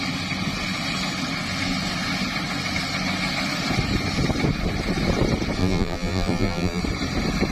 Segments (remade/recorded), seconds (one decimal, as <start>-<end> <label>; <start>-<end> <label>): 0.0-5.6 recorded; 5.6-6.8 remade; 6.8-7.5 recorded